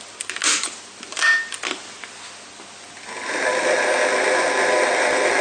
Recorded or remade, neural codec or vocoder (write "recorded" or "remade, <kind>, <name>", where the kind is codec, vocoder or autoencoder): recorded